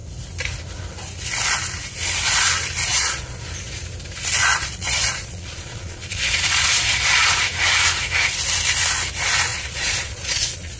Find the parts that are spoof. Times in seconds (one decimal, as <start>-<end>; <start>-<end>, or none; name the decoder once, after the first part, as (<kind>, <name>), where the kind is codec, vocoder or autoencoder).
2.9-3.4 (vocoder, Vocos); 4.4-7.5; 9.5-10.8